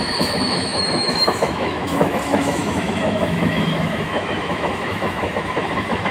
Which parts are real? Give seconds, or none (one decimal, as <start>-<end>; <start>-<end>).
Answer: none